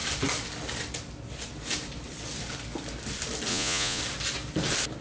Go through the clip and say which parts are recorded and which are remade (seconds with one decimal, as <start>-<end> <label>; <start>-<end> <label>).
0.0-3.5 recorded; 3.5-4.0 remade; 4.0-5.0 recorded